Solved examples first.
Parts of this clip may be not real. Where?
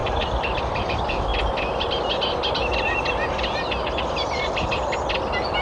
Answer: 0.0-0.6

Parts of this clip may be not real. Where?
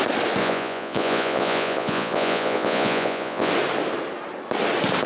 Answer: 0.4-3.5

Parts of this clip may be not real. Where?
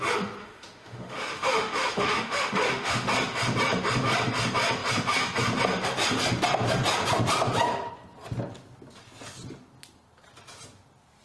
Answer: 0.4-3.1